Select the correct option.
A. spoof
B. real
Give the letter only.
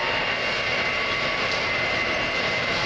B